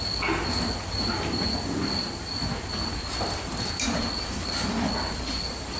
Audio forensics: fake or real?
real